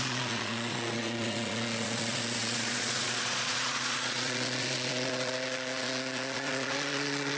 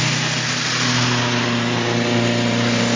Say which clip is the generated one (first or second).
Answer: first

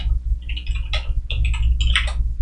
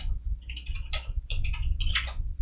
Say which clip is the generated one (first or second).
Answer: second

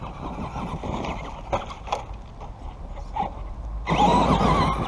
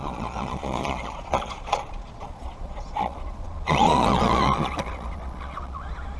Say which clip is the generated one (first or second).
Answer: second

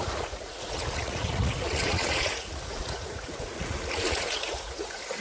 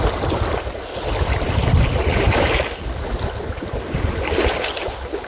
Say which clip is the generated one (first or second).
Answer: first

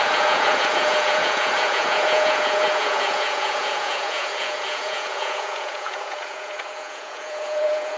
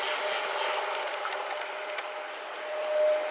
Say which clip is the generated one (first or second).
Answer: first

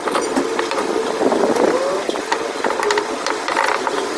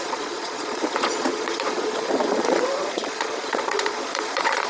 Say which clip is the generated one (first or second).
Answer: second